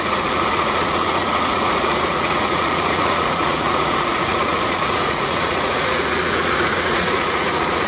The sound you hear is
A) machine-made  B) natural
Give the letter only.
A